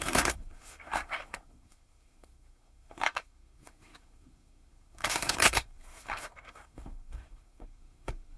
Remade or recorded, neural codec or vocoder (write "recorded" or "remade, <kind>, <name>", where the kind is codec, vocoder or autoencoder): remade, codec, SNAC